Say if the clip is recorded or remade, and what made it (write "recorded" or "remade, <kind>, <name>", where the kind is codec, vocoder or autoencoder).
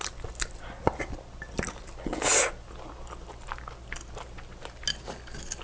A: recorded